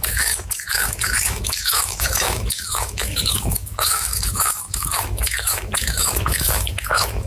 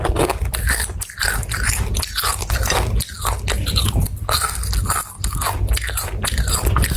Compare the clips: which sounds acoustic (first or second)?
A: second